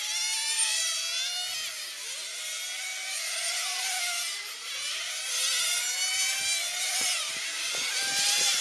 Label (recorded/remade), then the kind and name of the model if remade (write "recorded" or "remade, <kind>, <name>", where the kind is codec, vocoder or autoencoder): recorded